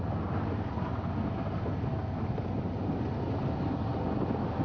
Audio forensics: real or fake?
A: real